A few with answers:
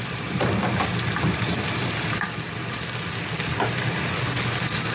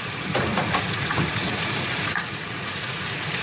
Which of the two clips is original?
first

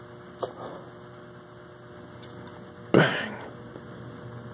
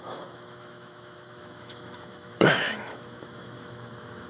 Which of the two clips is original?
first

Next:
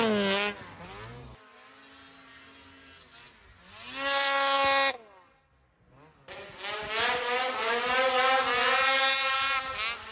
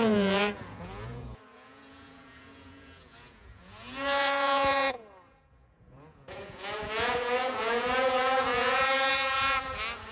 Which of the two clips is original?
first